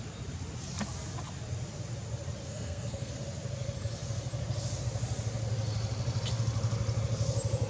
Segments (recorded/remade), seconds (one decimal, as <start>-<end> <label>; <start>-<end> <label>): 0.0-2.4 recorded; 2.4-3.1 remade; 3.1-7.7 recorded